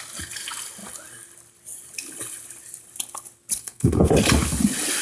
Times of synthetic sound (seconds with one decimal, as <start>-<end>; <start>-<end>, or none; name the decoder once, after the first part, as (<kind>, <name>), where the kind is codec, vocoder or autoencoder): 3.6-4.1 (codec, SNAC)